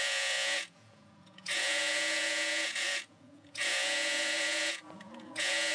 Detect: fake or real fake